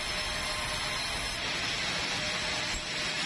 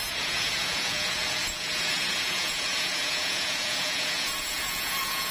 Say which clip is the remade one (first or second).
second